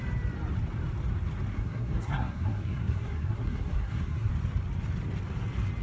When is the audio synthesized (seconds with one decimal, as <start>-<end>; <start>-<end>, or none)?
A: 1.5-4.3